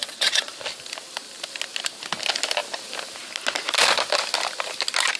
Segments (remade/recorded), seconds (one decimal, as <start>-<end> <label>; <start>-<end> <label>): 0.0-0.5 remade; 0.5-5.2 recorded